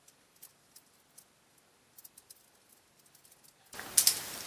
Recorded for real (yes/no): yes